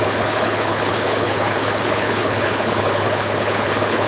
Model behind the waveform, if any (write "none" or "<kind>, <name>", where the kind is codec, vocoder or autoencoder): codec, HILCodec